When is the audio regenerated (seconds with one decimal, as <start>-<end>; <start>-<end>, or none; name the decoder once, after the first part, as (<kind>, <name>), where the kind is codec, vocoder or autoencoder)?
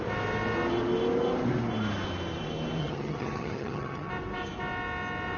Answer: 2.8-4.1 (vocoder, HiFi-GAN)